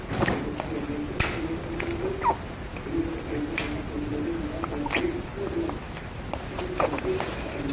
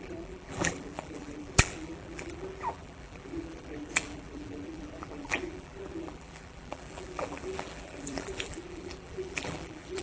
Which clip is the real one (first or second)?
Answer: first